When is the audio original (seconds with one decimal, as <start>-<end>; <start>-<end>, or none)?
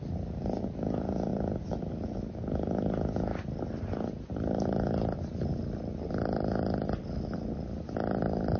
0.0-8.6